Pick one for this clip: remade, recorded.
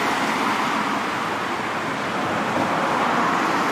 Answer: recorded